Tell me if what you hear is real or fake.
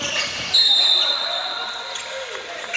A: real